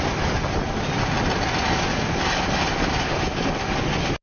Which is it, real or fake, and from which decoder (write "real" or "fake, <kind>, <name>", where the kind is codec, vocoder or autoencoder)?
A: real